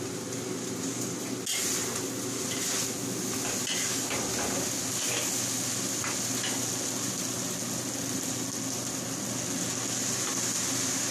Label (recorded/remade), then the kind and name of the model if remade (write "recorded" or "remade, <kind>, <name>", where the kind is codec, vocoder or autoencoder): recorded